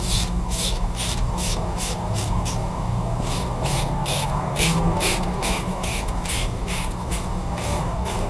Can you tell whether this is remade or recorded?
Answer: remade